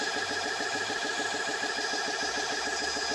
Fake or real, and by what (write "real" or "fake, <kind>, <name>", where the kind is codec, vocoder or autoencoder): real